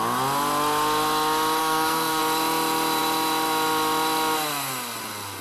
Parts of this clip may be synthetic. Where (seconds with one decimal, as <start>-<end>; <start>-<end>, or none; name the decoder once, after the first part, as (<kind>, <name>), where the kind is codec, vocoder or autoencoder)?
1.6-2.2 (codec, SNAC)